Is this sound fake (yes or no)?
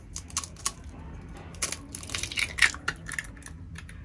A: no